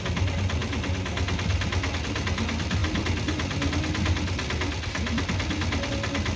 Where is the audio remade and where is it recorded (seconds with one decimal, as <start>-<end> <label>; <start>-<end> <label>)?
0.0-6.4 recorded